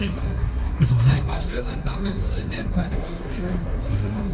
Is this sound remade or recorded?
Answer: remade